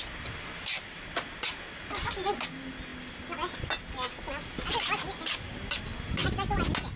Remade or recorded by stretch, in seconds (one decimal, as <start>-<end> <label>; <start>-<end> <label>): 0.0-7.0 recorded